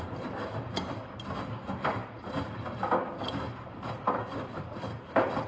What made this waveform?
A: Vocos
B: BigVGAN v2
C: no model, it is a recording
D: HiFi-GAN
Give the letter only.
C